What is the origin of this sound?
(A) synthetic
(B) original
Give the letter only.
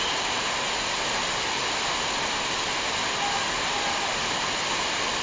B